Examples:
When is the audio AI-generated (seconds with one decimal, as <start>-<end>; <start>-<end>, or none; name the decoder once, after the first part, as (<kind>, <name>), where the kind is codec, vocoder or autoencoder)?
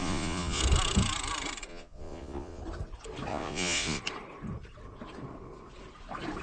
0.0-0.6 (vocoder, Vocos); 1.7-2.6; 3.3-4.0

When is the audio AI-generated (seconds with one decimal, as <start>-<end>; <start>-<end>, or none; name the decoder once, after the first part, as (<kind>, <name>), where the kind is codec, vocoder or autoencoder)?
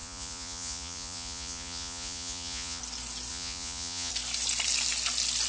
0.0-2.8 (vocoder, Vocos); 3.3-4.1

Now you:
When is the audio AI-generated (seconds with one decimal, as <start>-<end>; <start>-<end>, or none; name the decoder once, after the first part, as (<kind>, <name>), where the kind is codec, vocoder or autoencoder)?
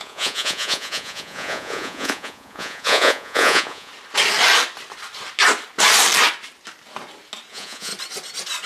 0.0-3.9 (vocoder, Vocos); 7.5-7.9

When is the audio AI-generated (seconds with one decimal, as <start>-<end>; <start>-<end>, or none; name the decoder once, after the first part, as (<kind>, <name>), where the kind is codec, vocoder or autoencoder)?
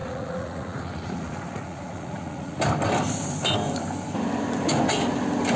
0.0-2.6 (vocoder, Vocos)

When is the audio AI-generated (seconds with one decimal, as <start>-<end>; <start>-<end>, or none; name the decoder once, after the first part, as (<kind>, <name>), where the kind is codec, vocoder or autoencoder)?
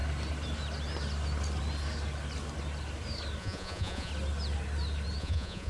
3.4-4.1 (vocoder, Vocos); 5.2-5.7